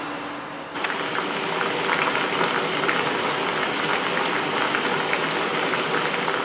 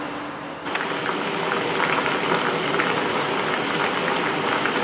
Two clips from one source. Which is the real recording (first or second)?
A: first